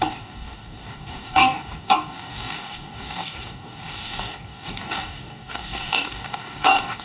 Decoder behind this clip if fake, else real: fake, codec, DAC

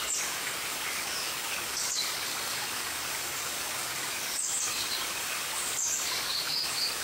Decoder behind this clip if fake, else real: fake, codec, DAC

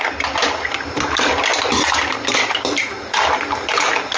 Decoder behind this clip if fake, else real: real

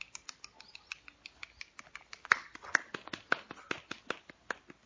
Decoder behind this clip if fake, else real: real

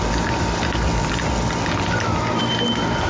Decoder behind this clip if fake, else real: real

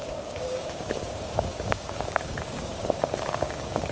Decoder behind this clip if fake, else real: fake, codec, DAC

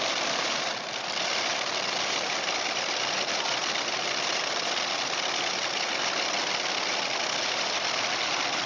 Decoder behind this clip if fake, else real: real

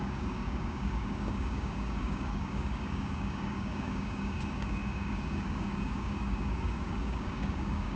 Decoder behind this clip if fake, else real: fake, codec, DAC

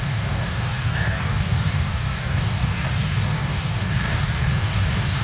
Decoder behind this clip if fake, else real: fake, codec, DAC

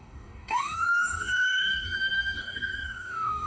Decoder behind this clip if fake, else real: fake, codec, DAC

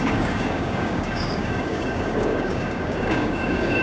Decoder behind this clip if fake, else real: fake, codec, DAC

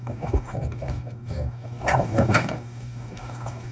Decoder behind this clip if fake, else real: fake, codec, DAC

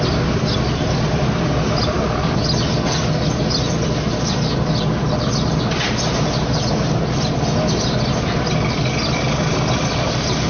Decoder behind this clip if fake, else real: real